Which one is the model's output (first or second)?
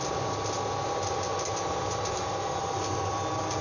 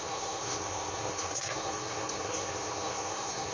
second